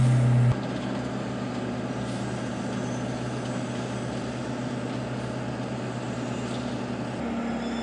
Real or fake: real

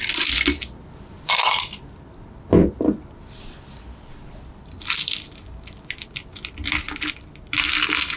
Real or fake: real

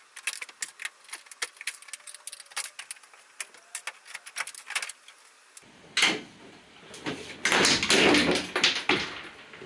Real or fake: real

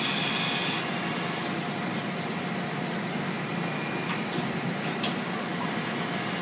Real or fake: real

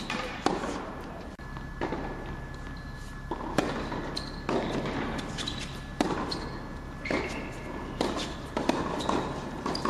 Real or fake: real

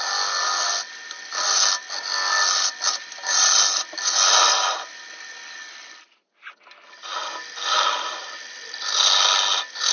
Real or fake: real